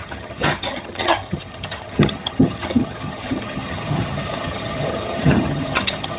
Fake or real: fake